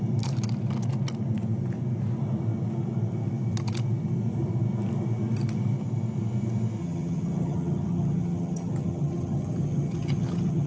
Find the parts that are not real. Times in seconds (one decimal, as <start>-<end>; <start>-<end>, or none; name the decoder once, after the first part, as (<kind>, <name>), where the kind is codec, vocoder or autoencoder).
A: 6.8-10.7 (vocoder, HiFi-GAN)

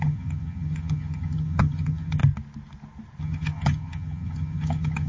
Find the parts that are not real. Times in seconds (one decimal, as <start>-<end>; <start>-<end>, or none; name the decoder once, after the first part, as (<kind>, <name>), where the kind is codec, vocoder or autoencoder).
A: 0.0-2.2 (vocoder, HiFi-GAN); 3.2-5.1

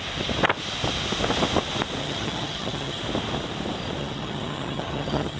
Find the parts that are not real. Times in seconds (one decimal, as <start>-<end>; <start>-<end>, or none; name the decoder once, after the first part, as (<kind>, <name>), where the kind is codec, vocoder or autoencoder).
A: 2.0-3.0 (vocoder, HiFi-GAN); 4.0-5.4

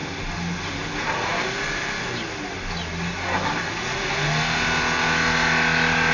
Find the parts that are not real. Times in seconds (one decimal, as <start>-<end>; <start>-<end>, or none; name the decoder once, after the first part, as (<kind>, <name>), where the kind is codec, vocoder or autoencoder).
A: none

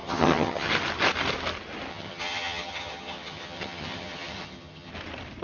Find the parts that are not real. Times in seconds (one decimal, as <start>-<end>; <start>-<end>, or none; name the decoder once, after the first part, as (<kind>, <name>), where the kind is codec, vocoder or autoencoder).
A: 0.0-0.7 (vocoder, HiFi-GAN); 1.9-4.9

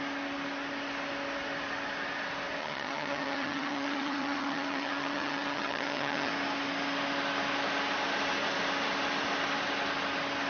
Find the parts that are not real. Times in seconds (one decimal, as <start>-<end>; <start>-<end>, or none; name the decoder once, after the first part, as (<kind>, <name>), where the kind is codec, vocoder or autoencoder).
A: 2.6-6.3 (vocoder, HiFi-GAN)

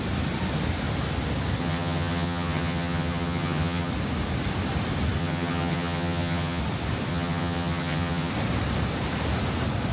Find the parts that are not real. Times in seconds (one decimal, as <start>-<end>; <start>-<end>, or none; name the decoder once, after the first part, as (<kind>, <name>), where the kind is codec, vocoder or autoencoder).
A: 1.6-3.9 (vocoder, HiFi-GAN); 5.2-6.6; 7.1-8.3